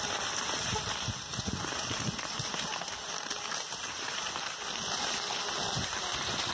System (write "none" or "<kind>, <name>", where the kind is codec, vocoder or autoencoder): none